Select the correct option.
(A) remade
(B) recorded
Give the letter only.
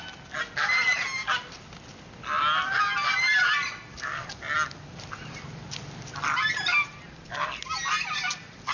B